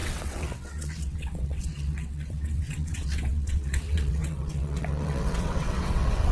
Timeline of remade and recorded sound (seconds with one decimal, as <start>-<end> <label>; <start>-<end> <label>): 0.0-6.3 remade